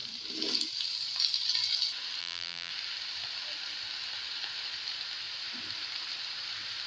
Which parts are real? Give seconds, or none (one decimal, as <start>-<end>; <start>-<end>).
0.0-2.2; 2.7-6.9